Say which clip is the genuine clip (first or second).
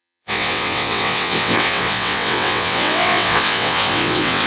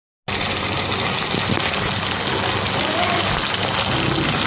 second